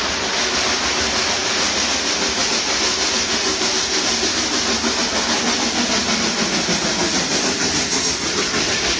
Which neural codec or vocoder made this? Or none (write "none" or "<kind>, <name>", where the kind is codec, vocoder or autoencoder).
none